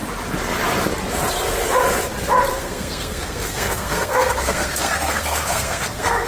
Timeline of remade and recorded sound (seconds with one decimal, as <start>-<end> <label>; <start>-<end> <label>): 0.0-2.5 recorded; 2.5-6.3 remade